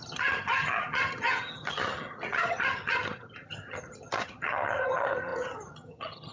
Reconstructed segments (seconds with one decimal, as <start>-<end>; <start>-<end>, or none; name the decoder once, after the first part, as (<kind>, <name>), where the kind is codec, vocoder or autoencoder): 0.0-6.3 (vocoder, HiFi-GAN)